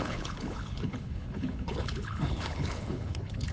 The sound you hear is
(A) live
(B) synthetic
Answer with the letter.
B